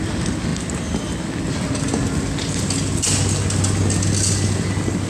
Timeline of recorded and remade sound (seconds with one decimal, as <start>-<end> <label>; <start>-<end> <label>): 0.0-5.1 recorded